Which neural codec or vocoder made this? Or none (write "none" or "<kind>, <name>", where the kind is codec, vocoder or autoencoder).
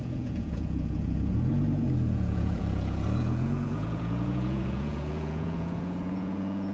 vocoder, Vocos